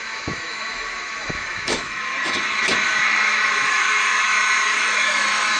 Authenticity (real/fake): fake